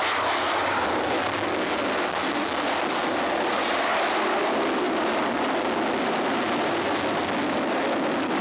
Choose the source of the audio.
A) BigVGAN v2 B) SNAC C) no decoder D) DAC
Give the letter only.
C